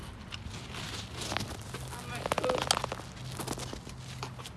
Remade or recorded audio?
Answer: recorded